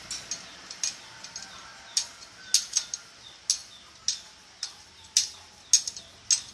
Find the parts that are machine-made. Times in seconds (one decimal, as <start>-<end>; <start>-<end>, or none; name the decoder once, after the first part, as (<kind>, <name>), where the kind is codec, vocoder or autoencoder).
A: none